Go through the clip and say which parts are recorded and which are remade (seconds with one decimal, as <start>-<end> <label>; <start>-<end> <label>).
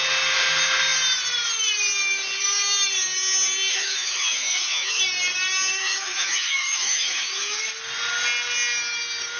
0.0-3.7 recorded; 3.7-5.0 remade; 5.0-5.8 recorded; 5.8-7.6 remade; 7.6-9.4 recorded